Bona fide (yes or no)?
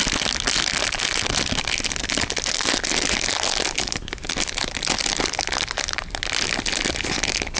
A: yes